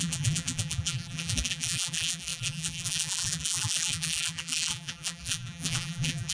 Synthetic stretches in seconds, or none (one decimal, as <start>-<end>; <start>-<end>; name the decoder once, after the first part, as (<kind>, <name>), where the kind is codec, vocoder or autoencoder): 0.0-6.3 (vocoder, BigVGAN v2)